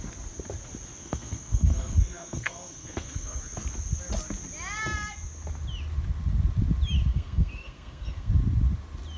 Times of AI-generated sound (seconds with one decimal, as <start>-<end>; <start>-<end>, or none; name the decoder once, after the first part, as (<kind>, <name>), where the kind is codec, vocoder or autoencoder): 1.0-3.4 (codec, SNAC); 7.1-8.3